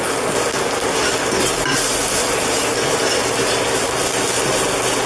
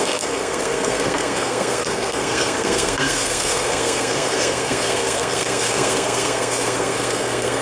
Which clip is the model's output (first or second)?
second